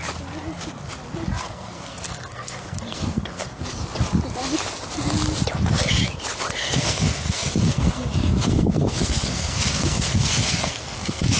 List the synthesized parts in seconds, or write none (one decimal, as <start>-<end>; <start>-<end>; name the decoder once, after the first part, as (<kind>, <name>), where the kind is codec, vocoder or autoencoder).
1.4-3.6 (codec, SNAC); 6.6-11.4